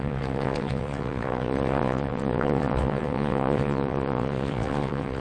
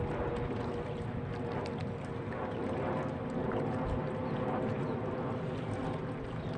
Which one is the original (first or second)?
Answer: second